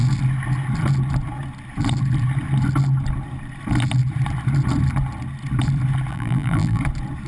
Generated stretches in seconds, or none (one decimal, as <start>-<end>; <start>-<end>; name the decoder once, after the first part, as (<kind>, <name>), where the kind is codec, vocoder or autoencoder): 6.1-6.8 (vocoder, BigVGAN v2)